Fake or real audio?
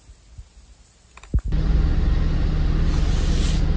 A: real